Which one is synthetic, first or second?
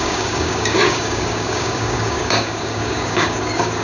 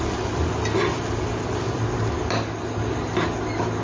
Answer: first